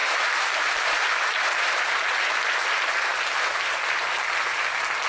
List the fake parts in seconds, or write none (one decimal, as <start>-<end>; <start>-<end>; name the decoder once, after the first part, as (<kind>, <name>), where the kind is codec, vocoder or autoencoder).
0.0-1.8 (vocoder, BigVGAN v2)